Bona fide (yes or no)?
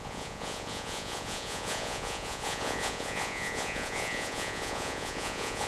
no